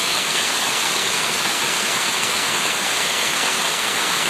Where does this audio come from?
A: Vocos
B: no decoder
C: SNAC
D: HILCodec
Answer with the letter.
C